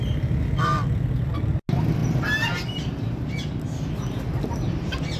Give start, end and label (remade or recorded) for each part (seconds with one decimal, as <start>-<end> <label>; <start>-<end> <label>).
0.0-5.2 recorded